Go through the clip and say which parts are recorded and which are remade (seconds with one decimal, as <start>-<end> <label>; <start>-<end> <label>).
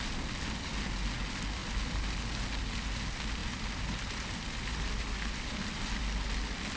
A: 0.0-6.8 recorded